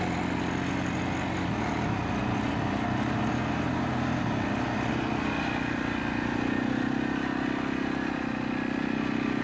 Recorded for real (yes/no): yes